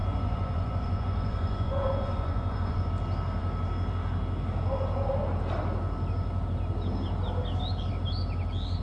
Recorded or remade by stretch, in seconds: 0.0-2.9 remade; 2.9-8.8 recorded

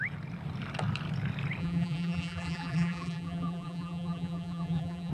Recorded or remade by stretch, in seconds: 0.0-1.6 recorded; 1.6-5.1 remade

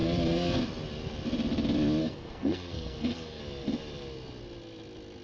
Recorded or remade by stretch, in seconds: 0.0-0.6 remade; 0.6-2.0 recorded; 2.0-3.4 remade; 3.4-5.2 recorded

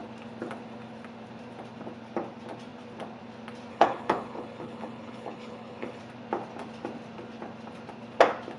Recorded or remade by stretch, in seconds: 0.0-3.7 recorded; 3.7-6.0 remade; 6.0-8.6 recorded

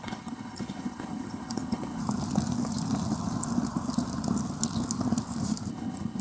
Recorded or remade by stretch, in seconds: 0.0-2.0 remade; 2.0-5.7 recorded; 5.7-6.2 remade

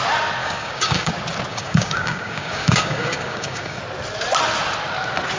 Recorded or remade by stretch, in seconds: 0.0-0.4 recorded; 0.4-1.1 remade; 1.1-1.5 recorded; 1.5-3.8 remade; 3.8-5.4 recorded